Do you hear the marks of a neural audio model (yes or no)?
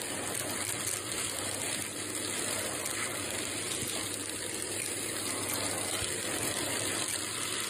no